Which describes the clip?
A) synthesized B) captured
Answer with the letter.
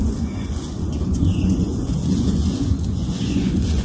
A